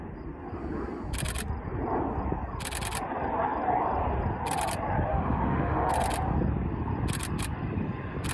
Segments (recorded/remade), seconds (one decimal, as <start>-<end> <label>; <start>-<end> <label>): 0.0-5.1 recorded; 5.1-5.9 remade; 5.9-8.3 recorded